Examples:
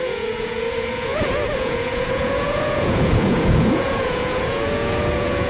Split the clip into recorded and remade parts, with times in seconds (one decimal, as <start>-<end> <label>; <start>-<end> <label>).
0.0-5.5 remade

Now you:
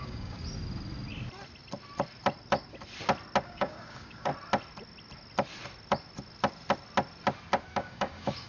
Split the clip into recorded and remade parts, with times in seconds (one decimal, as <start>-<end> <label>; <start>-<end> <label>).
0.0-0.4 remade; 0.4-3.4 recorded; 3.4-4.3 remade; 4.3-7.7 recorded; 7.7-8.5 remade

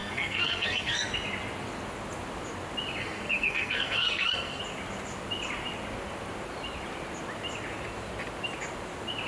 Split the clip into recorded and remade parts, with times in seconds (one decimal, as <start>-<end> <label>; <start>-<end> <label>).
0.0-1.1 remade; 1.1-3.0 recorded; 3.0-4.6 remade; 4.6-9.3 recorded

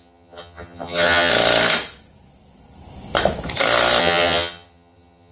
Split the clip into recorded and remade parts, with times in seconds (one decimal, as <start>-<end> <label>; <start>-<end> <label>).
0.0-1.3 remade; 1.3-4.0 recorded; 4.0-5.3 remade

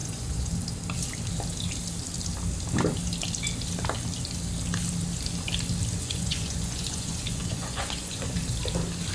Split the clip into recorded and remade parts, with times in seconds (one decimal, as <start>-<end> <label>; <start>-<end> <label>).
0.0-0.5 remade; 0.5-6.0 recorded; 6.0-8.4 remade; 8.4-9.1 recorded

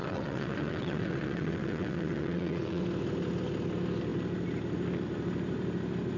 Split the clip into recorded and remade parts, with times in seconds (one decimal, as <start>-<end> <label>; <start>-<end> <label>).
0.0-2.8 remade; 2.8-6.2 recorded